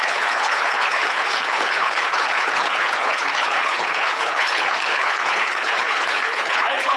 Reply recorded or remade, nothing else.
remade